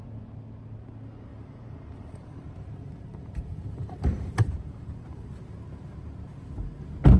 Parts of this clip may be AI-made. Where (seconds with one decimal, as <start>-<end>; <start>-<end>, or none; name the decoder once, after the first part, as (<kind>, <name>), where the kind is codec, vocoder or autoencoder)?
1.3-5.4 (vocoder, BigVGAN v2)